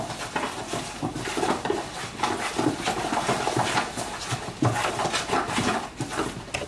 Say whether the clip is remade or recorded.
recorded